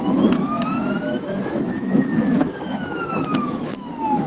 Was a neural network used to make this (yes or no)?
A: yes